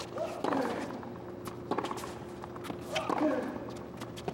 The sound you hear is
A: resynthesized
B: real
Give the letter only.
B